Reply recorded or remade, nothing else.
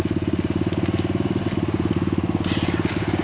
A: recorded